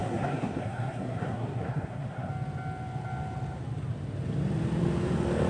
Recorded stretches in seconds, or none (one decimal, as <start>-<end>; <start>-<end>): 2.3-5.5